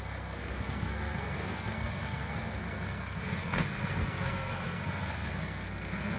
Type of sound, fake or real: fake